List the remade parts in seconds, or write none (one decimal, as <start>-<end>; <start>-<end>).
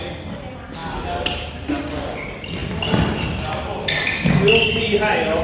none